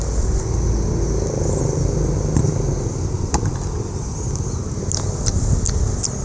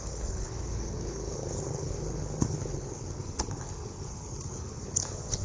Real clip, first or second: first